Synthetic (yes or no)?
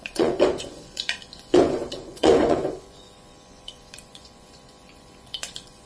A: yes